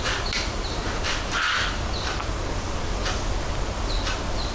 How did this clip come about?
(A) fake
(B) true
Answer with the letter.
B